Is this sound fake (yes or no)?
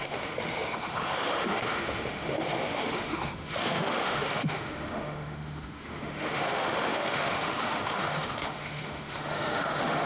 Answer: yes